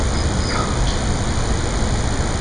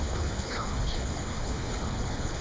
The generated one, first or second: second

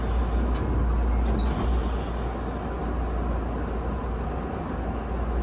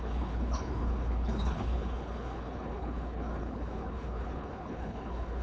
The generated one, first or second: second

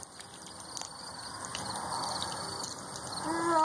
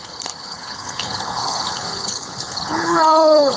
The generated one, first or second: second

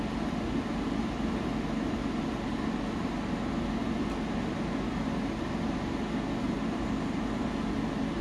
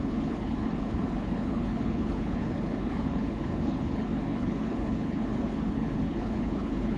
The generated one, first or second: second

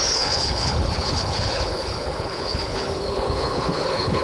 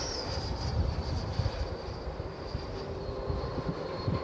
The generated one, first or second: first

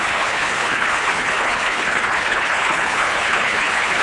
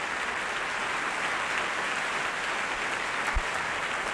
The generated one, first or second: first